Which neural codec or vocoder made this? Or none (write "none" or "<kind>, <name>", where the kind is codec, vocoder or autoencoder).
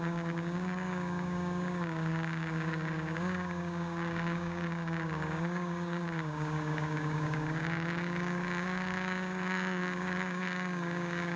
codec, DAC